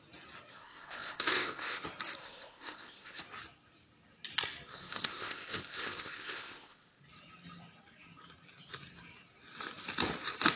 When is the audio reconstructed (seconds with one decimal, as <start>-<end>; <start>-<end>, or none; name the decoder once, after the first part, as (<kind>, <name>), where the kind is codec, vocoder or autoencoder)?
0.5-1.8 (codec, ZipCodec); 2.2-3.2; 4.7-7.0